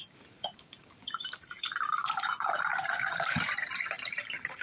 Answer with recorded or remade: remade